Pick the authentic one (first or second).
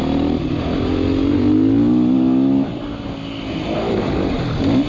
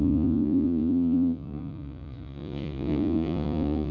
first